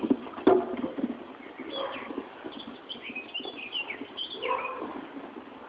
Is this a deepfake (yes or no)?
no